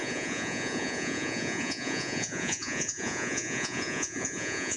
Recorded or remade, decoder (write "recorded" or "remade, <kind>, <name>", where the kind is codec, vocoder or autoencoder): remade, vocoder, Vocos